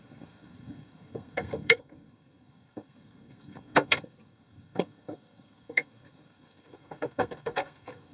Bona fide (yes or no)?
no